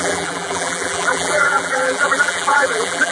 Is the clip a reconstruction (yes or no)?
yes